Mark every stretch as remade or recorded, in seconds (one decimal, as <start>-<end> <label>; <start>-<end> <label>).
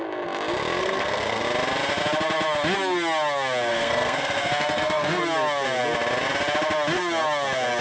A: 0.0-0.8 recorded; 0.8-1.4 remade; 1.4-3.7 recorded; 3.7-5.2 remade; 5.2-7.8 recorded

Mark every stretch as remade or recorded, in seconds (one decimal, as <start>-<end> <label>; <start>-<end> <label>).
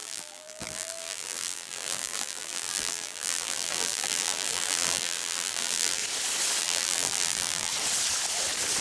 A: 0.0-6.0 remade; 6.0-6.6 recorded; 6.6-7.7 remade; 7.7-8.8 recorded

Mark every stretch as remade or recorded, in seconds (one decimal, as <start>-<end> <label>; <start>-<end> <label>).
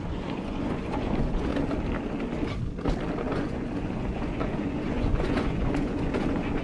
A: 0.0-1.5 remade; 1.5-3.2 recorded; 3.2-6.6 remade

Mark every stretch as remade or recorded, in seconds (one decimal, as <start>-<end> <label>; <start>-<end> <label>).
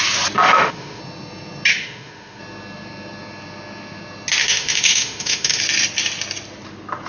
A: 0.0-0.4 recorded; 0.4-1.0 remade; 1.0-1.7 recorded; 1.7-2.4 remade; 2.4-4.4 recorded; 4.4-5.6 remade; 5.6-7.1 recorded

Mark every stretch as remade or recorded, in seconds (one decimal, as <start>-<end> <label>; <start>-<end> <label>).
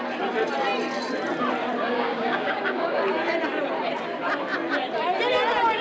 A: 0.0-1.9 recorded; 1.9-3.0 remade; 3.0-5.8 recorded